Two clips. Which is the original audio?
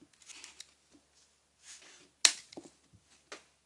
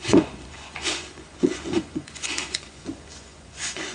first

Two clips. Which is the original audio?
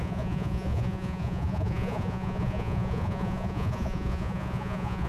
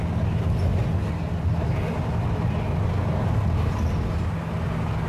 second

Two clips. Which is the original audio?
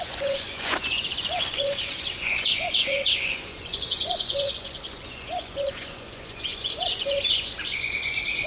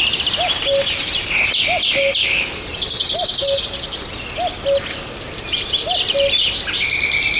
second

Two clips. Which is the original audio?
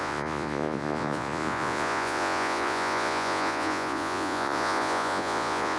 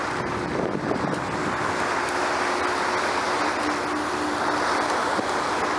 second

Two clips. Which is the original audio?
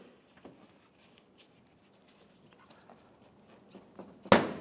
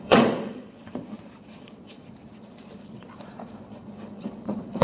first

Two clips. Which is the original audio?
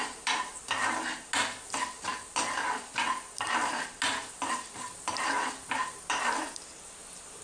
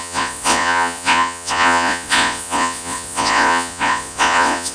first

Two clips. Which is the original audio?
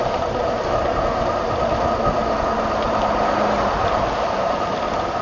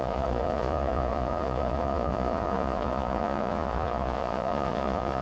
first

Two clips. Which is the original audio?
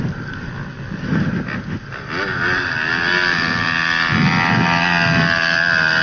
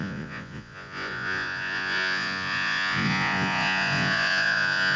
first